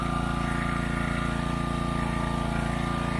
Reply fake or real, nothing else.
fake